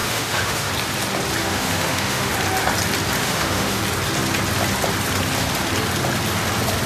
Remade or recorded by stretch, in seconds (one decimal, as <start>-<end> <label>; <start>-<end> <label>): 0.0-0.7 remade; 0.7-1.4 recorded; 1.4-2.3 remade; 2.3-3.2 recorded; 3.2-3.8 remade; 3.8-6.9 recorded

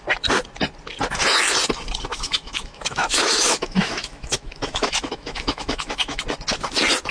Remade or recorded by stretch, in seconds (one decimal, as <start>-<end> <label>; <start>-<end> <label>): 0.0-2.1 recorded; 2.1-6.2 remade; 6.2-7.1 recorded

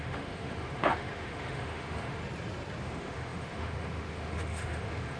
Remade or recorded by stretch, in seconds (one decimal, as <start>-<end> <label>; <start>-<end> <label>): 0.0-2.2 remade; 2.2-2.8 recorded; 2.8-5.2 remade

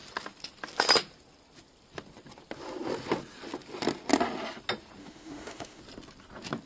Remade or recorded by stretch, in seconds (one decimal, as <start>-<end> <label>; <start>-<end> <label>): 0.0-5.0 recorded; 5.0-5.8 remade; 5.8-6.7 recorded

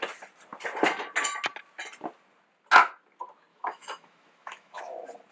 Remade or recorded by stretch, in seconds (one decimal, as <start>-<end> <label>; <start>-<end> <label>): 0.0-3.5 recorded; 3.5-4.8 remade; 4.8-5.3 recorded

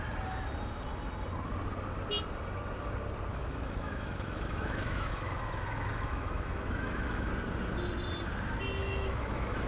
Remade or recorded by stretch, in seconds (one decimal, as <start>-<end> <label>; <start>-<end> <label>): 0.0-3.3 recorded; 3.3-7.3 remade; 7.3-8.8 recorded; 8.8-9.7 remade